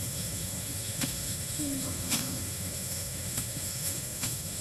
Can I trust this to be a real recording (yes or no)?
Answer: no